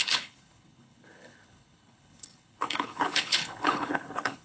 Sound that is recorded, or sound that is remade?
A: remade